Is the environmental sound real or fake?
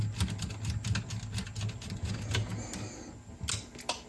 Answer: real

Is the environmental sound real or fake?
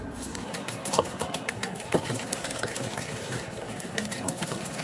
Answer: fake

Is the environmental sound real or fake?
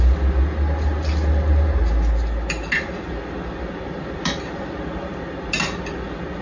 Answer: real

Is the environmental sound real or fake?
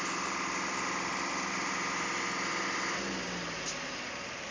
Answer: real